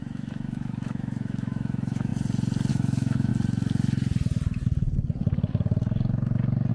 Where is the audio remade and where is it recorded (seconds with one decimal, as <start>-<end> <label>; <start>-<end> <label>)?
0.0-2.1 remade; 2.1-2.7 recorded; 2.7-3.3 remade; 3.3-6.7 recorded

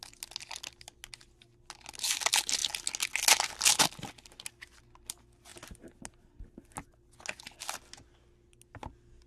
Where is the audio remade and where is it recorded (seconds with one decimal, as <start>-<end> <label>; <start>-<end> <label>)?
0.0-9.3 recorded

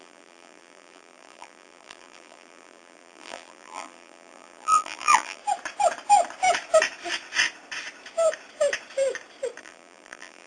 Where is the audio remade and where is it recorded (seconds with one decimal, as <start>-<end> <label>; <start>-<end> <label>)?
0.0-5.4 remade; 5.4-9.6 recorded; 9.6-10.5 remade